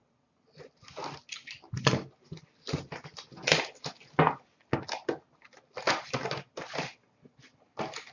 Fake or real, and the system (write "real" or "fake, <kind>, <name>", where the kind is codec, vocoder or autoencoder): real